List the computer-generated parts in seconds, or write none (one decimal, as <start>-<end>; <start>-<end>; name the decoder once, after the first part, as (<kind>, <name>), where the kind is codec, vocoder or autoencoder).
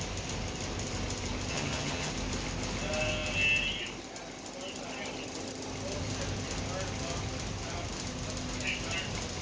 1.5-2.1 (vocoder, HiFi-GAN)